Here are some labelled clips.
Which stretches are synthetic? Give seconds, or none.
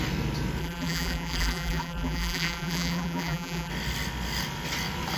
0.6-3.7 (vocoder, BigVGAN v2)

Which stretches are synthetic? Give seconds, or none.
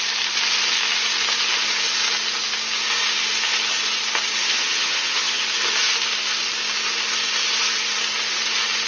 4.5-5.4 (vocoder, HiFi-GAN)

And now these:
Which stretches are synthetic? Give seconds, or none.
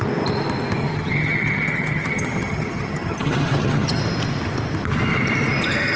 0.8-4.0 (vocoder, HiFi-GAN)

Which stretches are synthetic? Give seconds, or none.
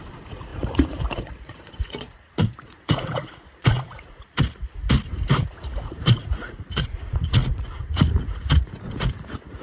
0.0-4.8 (vocoder, Vocos); 5.4-9.6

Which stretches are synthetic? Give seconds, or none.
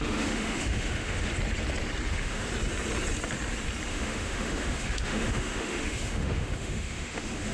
0.0-1.3 (autoencoder, DAC-VAE); 2.1-2.5; 3.9-7.5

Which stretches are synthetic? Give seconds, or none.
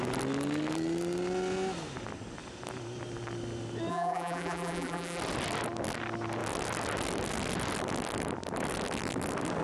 3.9-5.2 (vocoder, BigVGAN v2)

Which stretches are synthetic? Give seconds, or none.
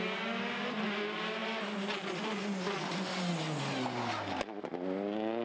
none